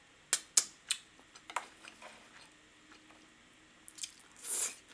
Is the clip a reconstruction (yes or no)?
no